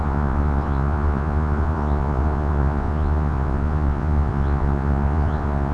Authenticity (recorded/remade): remade